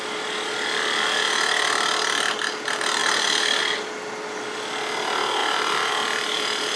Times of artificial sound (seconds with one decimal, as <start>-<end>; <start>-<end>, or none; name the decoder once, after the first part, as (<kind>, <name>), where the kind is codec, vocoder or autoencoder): 3.0-3.6 (vocoder, BigVGAN v2); 5.4-5.9

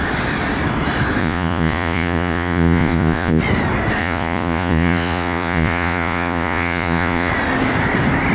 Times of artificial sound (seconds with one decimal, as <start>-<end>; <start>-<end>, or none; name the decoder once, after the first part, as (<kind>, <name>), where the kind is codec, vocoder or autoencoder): 1.2-3.4 (vocoder, Vocos); 4.0-7.3